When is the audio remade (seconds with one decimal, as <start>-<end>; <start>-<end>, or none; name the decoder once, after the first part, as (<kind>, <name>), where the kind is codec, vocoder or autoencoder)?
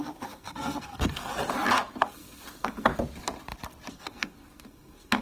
0.0-1.3 (codec, SNAC); 2.0-2.9; 3.9-5.2